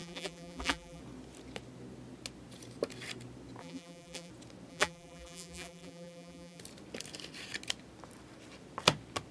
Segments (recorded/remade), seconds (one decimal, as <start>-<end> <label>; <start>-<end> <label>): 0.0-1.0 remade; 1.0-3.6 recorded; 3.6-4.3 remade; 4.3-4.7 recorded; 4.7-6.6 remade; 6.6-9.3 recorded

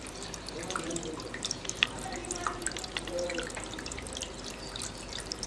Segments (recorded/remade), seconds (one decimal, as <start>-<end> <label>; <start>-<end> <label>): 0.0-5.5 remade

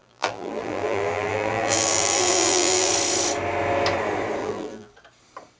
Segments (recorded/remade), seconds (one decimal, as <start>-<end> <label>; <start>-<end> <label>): 0.0-2.9 remade; 2.9-4.4 recorded; 4.4-4.9 remade; 4.9-5.6 recorded

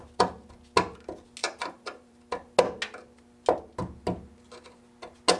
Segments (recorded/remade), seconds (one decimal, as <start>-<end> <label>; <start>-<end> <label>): 0.0-1.4 recorded; 1.4-2.2 remade; 2.2-5.4 recorded